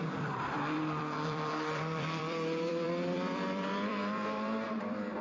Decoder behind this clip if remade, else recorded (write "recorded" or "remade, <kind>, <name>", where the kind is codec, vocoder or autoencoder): remade, vocoder, BigVGAN v2